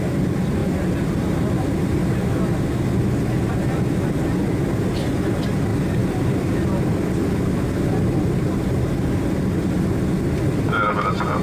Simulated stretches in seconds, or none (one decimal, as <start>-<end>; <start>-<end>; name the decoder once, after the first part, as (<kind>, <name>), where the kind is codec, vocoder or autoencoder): none